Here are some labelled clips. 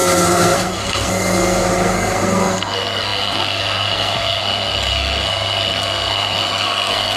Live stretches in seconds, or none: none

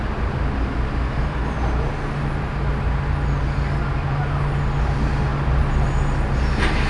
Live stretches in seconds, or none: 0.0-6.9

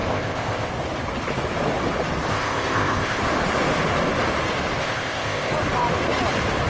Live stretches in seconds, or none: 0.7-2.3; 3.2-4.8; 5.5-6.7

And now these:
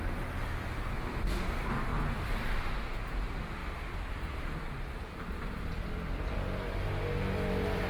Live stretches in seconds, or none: 0.0-3.6; 6.8-7.9

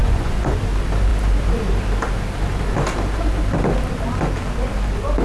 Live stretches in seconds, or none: 0.6-5.2